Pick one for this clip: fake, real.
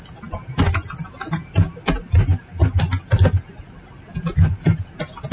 real